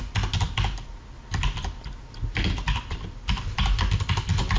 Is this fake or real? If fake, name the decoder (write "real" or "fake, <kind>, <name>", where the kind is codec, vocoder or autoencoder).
real